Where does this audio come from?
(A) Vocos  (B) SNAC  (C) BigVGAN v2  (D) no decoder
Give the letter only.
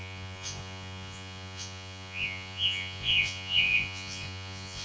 A